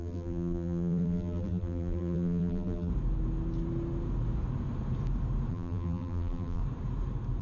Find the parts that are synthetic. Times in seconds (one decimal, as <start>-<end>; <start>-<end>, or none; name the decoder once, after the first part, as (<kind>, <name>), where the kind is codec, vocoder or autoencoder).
0.0-2.9 (vocoder, BigVGAN v2); 5.5-6.6